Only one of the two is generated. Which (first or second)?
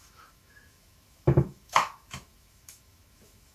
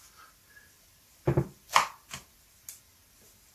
first